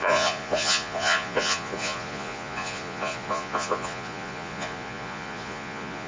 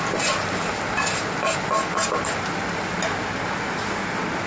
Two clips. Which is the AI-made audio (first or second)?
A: first